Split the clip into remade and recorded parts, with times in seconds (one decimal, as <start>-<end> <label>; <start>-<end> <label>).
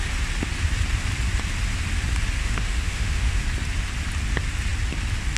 0.0-2.4 recorded; 2.4-3.4 remade; 3.4-5.4 recorded